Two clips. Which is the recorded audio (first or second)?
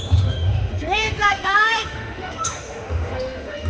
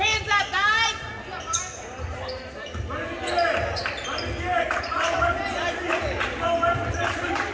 second